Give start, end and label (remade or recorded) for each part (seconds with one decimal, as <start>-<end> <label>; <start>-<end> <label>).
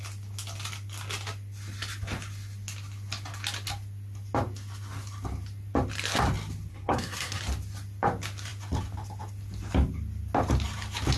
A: 0.0-6.7 recorded; 6.7-7.4 remade; 7.4-11.2 recorded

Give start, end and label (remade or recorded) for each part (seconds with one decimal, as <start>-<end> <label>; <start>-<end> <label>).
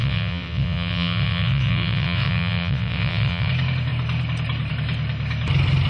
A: 0.0-3.5 remade; 3.5-5.9 recorded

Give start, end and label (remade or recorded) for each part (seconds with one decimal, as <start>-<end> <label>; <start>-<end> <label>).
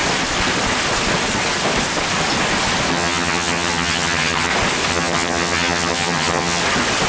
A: 0.0-2.9 recorded; 2.9-4.5 remade; 4.5-4.9 recorded; 4.9-6.6 remade; 6.6-7.1 recorded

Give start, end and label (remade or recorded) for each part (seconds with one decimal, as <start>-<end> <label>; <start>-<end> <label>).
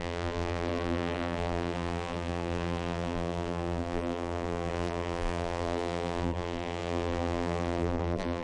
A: 0.0-8.4 remade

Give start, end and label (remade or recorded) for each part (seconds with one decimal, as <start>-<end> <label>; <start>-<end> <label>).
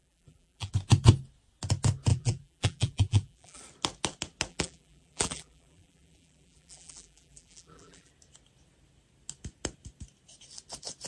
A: 0.0-0.7 remade; 0.7-2.1 recorded; 2.1-3.6 remade; 3.6-4.5 recorded; 4.5-8.1 remade; 8.1-11.1 recorded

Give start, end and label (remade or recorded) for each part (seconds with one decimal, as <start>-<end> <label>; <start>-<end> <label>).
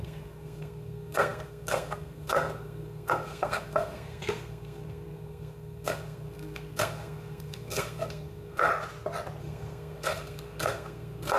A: 0.0-8.7 remade; 8.7-9.4 recorded; 9.4-11.4 remade